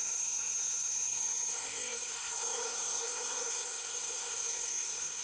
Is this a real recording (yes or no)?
no